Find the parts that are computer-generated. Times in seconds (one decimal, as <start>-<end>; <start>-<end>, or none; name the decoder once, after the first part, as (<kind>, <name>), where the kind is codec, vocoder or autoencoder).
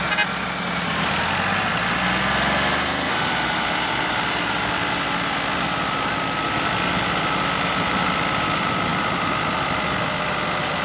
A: none